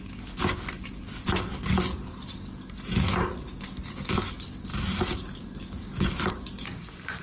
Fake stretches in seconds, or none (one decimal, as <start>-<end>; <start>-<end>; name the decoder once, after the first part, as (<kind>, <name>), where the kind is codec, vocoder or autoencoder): 0.0-7.2 (codec, DAC)